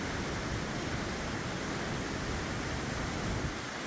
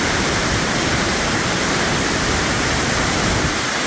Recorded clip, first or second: first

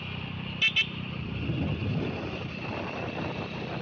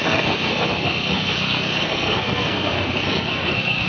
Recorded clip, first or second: first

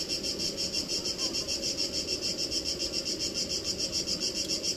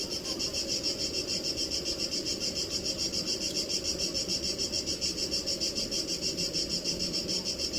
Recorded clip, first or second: first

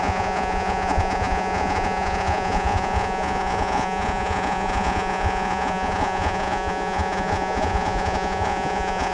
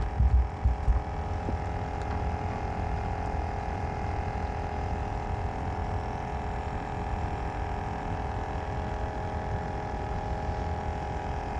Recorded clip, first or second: second